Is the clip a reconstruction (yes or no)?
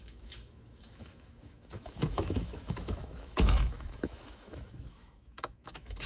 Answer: yes